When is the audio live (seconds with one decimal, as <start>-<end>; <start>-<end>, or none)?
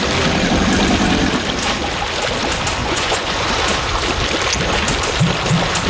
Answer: 0.0-2.8; 3.5-5.9